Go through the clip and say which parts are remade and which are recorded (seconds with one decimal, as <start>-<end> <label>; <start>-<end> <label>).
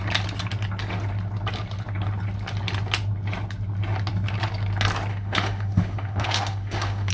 0.0-5.1 recorded; 5.1-7.1 remade